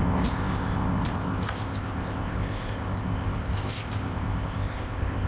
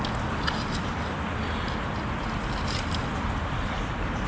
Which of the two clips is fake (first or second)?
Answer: first